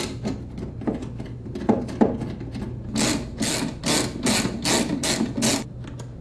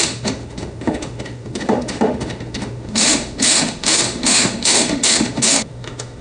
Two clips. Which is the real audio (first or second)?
first